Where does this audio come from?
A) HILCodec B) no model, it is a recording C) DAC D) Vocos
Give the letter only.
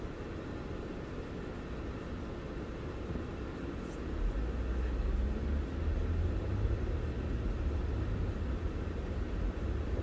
B